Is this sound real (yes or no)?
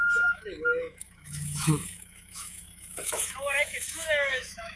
no